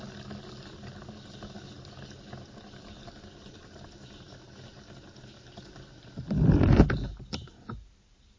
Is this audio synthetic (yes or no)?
no